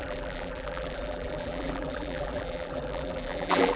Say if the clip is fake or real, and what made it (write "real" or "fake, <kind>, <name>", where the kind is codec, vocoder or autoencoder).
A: fake, vocoder, BigVGAN v2